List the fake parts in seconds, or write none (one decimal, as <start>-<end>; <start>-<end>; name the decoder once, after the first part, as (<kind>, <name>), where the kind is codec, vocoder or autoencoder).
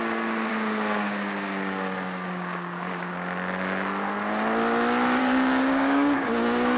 0.5-3.1 (codec, DAC); 5.2-6.8